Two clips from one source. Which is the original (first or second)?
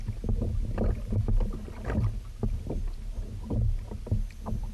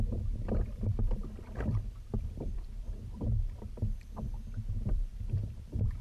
first